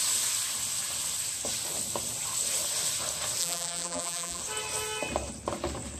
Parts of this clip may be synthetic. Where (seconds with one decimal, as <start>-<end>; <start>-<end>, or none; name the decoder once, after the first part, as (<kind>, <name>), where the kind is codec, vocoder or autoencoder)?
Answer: 3.4-4.4 (vocoder, BigVGAN v2)